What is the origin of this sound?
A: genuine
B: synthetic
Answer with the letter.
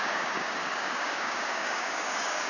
B